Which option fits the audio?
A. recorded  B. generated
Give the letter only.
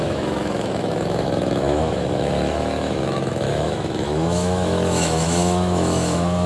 B